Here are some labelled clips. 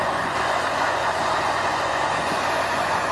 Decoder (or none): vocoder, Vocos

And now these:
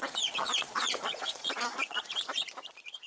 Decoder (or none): vocoder, Vocos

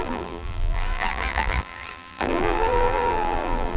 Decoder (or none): vocoder, BigVGAN v2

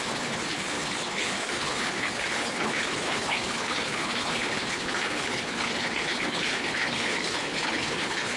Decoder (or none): codec, HILCodec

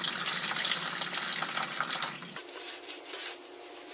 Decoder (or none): none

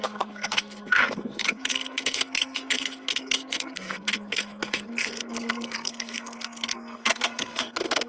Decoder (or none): codec, SNAC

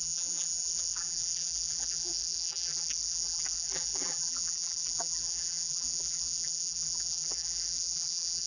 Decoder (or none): vocoder, BigVGAN v2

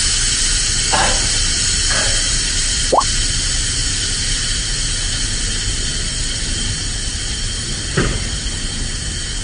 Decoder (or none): none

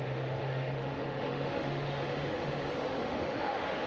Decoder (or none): autoencoder, DAC-VAE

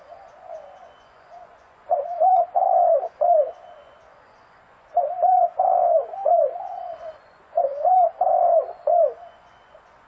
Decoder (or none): vocoder, Vocos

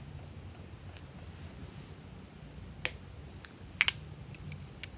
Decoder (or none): none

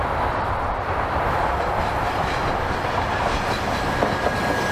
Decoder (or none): none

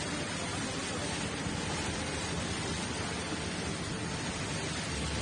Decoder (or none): none